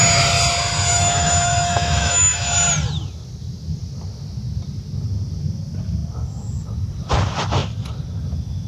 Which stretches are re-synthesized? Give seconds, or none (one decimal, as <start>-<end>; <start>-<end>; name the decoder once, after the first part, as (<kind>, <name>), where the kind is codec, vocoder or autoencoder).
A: 0.9-2.5 (autoencoder, DAC-VAE)